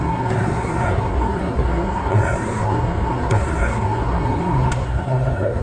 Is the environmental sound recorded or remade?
remade